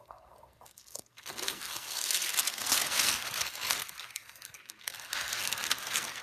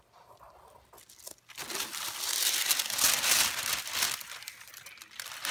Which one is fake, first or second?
first